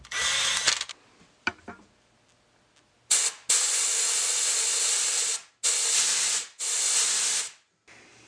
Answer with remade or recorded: recorded